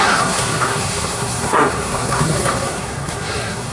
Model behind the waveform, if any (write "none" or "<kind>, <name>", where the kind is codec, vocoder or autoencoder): codec, SNAC